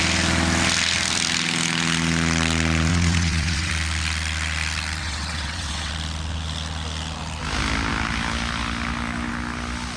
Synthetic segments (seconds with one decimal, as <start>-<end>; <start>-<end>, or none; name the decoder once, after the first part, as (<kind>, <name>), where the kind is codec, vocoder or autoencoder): 2.9-3.7 (vocoder, WaveNeXt); 5.0-5.9